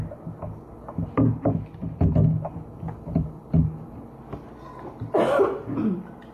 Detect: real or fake real